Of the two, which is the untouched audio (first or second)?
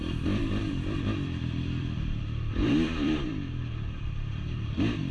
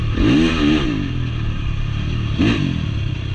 second